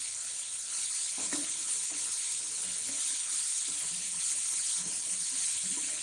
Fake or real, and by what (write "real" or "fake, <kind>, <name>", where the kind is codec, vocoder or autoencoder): fake, codec, HILCodec